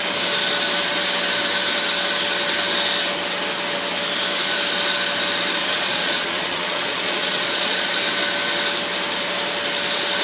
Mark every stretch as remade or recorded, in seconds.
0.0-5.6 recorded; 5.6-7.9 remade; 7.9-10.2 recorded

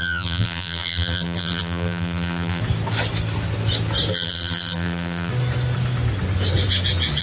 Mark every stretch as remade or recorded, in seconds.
0.0-2.6 remade; 2.6-4.1 recorded; 4.1-5.3 remade; 5.3-7.2 recorded

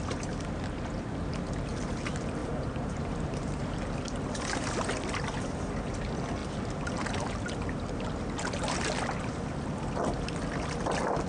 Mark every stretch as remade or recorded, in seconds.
0.0-2.4 recorded; 2.4-3.8 remade; 3.8-11.3 recorded

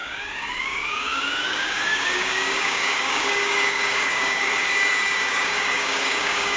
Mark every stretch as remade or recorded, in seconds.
0.0-6.6 remade

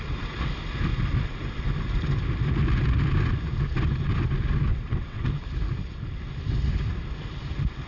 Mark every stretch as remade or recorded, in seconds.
0.0-4.7 recorded; 4.7-5.3 remade; 5.3-7.9 recorded

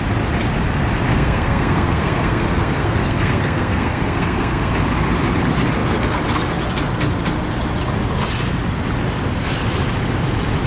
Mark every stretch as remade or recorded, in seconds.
0.0-1.1 recorded; 1.1-4.7 remade; 4.7-10.7 recorded